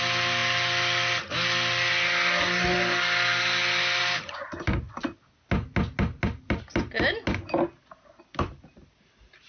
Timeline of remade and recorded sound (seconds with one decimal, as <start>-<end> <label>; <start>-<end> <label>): 0.0-9.5 recorded